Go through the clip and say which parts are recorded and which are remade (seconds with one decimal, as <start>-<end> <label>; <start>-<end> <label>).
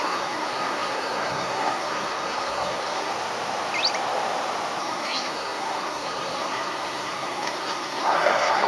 0.0-3.1 remade; 3.1-4.8 recorded; 4.8-8.7 remade